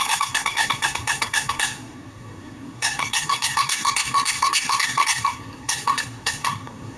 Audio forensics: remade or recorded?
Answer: remade